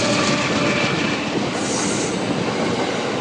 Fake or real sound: real